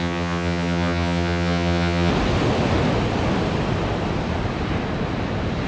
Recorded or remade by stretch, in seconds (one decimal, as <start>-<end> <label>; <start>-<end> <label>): 0.0-2.1 remade; 2.1-5.7 recorded